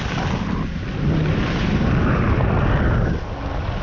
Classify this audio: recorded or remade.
recorded